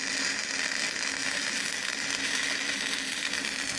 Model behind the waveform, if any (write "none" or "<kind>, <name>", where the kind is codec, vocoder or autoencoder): none